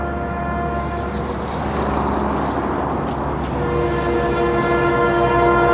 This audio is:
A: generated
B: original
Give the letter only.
B